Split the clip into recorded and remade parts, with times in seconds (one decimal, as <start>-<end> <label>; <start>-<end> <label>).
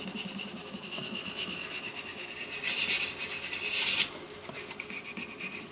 0.0-0.6 recorded; 0.6-2.3 remade; 2.3-5.7 recorded